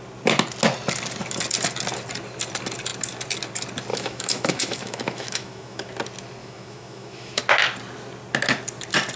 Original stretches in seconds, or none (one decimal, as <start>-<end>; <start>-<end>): 0.0-3.9; 5.9-6.4; 7.4-9.2